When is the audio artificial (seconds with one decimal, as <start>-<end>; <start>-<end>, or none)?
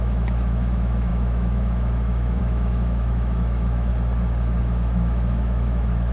0.0-3.9; 4.6-6.1